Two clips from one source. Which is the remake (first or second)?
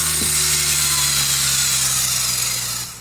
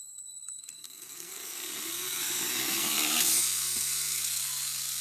second